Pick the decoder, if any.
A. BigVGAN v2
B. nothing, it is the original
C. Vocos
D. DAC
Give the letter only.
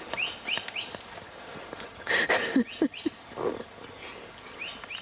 B